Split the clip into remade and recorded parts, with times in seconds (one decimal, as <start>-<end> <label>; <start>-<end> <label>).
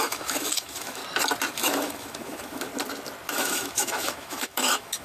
0.0-1.0 remade; 1.0-1.5 recorded; 1.5-2.7 remade; 2.7-3.3 recorded; 3.3-5.0 remade